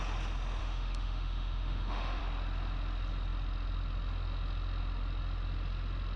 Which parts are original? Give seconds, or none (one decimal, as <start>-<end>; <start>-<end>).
0.0-0.6; 2.2-6.2